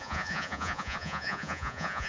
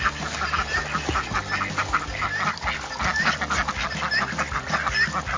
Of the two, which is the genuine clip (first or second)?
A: second